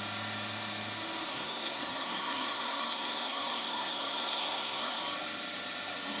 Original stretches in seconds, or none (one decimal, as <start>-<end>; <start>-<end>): 0.0-1.3; 5.0-6.2